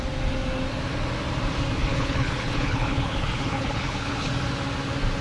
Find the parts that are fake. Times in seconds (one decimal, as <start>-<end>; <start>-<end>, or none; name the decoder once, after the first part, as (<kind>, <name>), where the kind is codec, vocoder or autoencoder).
1.9-4.3 (codec, HILCodec)